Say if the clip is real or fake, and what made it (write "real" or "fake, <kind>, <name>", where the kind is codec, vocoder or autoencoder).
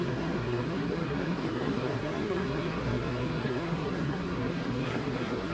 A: fake, codec, SNAC